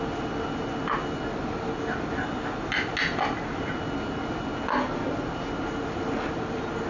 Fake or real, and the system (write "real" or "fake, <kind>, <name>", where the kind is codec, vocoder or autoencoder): real